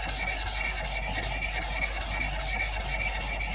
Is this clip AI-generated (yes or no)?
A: no